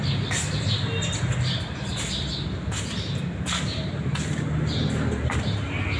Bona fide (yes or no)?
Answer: yes